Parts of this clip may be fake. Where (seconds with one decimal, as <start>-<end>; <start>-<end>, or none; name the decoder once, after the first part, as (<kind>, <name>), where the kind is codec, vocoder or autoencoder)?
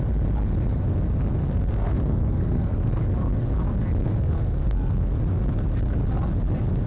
1.4-3.0 (codec, SNAC); 4.0-5.1